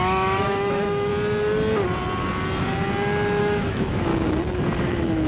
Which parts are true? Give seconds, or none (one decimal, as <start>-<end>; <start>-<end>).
1.1-3.4; 4.1-4.8